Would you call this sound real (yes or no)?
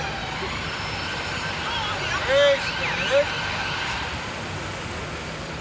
yes